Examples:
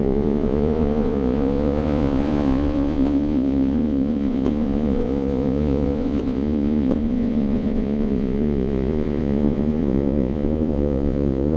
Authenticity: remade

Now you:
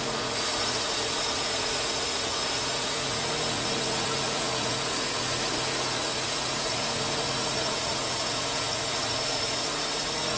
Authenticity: remade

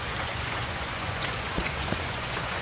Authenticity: remade